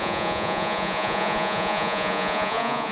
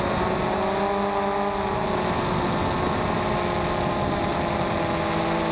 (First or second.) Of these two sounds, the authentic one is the second